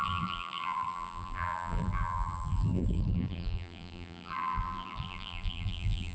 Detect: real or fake fake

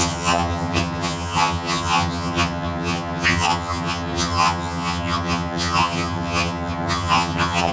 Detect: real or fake fake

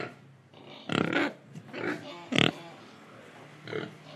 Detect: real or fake real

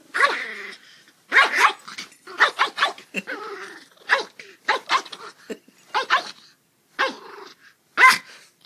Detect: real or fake real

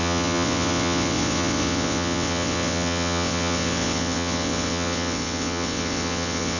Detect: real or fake fake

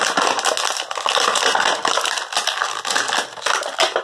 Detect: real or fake real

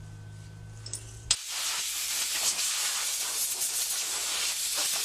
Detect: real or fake real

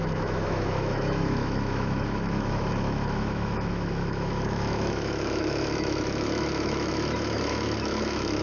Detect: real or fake fake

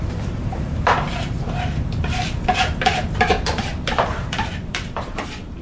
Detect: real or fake fake